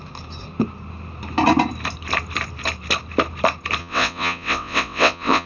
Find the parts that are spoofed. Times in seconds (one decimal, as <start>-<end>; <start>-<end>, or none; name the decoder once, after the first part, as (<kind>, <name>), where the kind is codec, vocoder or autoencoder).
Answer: 3.8-5.5 (vocoder, WaveNeXt)